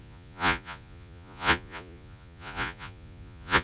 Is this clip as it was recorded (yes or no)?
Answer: no